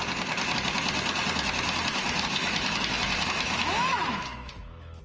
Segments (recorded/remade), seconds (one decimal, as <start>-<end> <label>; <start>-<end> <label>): 0.0-2.0 recorded; 2.0-5.0 remade